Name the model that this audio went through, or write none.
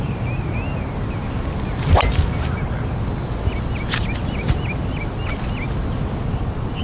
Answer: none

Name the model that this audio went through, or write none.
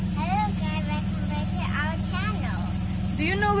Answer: none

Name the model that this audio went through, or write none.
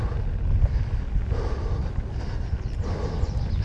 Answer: none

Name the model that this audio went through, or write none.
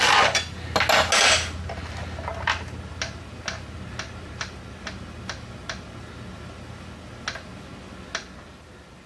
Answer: none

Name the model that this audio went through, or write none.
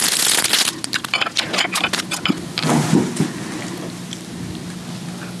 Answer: none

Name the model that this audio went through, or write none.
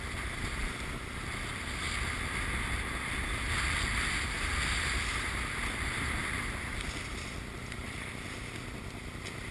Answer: none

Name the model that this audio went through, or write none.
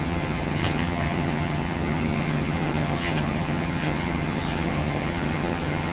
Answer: vocoder, HiFi-GAN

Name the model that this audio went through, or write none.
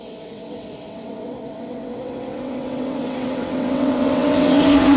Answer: vocoder, WaveNeXt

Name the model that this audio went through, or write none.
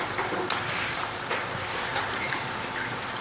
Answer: none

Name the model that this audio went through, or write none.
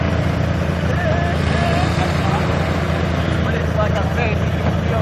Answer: none